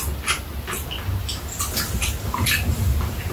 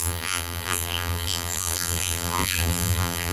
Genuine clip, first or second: first